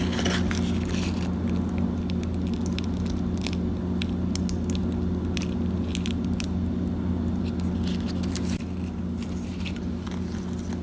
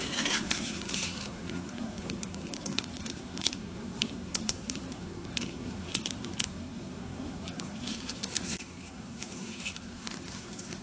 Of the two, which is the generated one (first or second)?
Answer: second